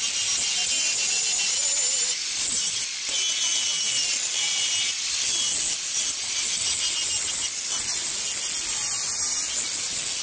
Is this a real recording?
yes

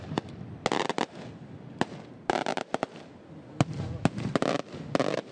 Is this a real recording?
yes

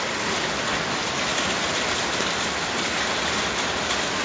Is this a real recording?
yes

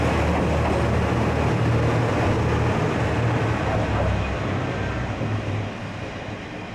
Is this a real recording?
yes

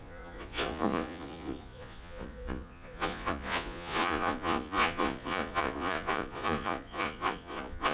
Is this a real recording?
no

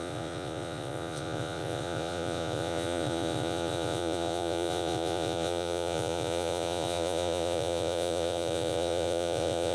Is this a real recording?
no